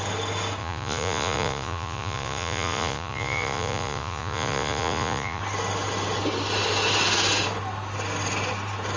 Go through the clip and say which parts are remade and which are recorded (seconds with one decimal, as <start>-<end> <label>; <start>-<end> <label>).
0.0-0.6 recorded; 0.6-5.4 remade; 5.4-9.0 recorded

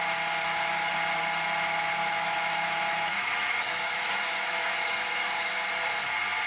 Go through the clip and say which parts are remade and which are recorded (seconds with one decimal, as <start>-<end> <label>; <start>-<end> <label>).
0.0-0.4 recorded; 0.4-0.9 remade; 0.9-2.0 recorded; 2.0-5.6 remade; 5.6-6.5 recorded

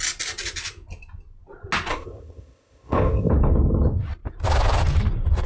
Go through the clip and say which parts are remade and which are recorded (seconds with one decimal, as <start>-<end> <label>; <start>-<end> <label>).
0.0-1.9 recorded; 1.9-3.3 remade; 3.3-5.5 recorded

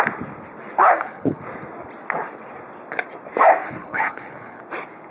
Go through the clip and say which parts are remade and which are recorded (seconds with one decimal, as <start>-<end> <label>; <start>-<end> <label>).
0.0-0.8 recorded; 0.8-1.4 remade; 1.4-3.6 recorded; 3.6-4.6 remade; 4.6-5.1 recorded

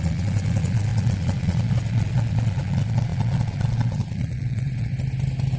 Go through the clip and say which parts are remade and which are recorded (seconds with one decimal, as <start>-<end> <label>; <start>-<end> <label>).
0.0-4.9 remade; 4.9-5.6 recorded

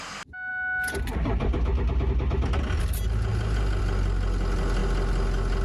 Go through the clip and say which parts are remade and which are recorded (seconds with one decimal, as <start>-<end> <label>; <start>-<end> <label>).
0.0-5.6 recorded